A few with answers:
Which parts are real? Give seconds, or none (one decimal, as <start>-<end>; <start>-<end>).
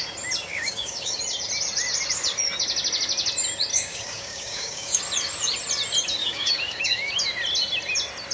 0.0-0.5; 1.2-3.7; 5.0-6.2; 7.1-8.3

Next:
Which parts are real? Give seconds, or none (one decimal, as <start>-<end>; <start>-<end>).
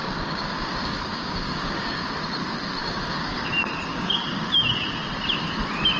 2.0-2.8; 3.5-3.9; 4.4-6.0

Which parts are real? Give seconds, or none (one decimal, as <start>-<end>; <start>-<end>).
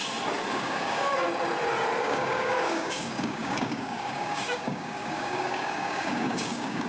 0.0-0.5; 1.1-2.0